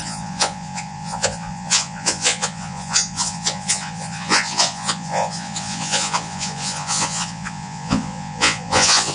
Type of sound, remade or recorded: remade